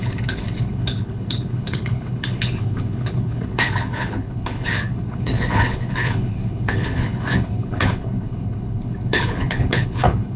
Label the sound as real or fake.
fake